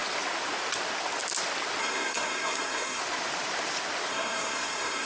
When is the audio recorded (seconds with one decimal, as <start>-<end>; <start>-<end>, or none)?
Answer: 0.0-1.8; 3.0-4.1